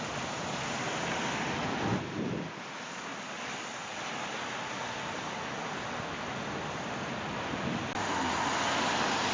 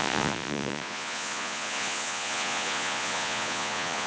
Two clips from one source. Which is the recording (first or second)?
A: first